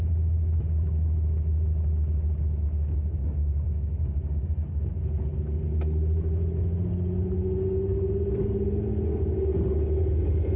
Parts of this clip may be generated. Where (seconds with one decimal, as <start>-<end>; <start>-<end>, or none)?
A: 3.2-4.8